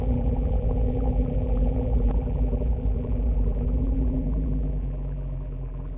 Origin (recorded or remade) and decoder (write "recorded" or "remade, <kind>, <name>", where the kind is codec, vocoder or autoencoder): remade, vocoder, BigVGAN v2